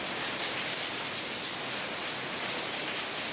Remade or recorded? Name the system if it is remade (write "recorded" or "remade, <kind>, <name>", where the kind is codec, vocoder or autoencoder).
recorded